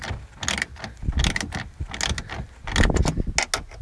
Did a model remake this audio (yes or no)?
no